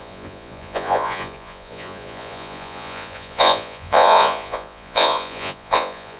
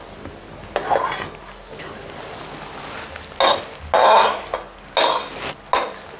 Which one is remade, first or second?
first